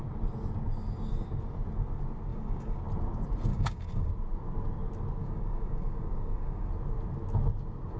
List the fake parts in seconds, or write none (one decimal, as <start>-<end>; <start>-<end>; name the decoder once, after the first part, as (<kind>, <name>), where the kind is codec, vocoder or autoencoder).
2.3-2.8 (codec, DAC); 3.5-4.1; 5.2-6.7